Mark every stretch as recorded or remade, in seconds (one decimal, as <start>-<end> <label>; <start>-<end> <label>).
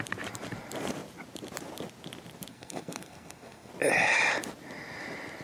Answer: 0.0-2.5 recorded; 2.5-3.7 remade; 3.7-5.4 recorded